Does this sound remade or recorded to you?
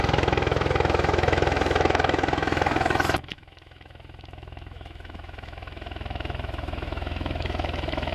remade